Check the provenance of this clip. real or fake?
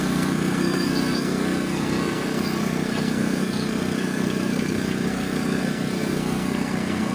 fake